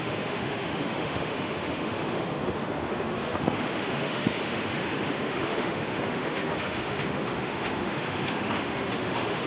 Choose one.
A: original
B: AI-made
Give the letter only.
B